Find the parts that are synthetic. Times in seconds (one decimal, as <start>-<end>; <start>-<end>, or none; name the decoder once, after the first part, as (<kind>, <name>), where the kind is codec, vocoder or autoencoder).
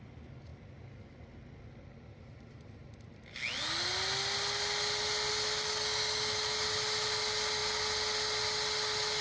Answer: none